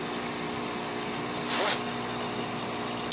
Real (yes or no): yes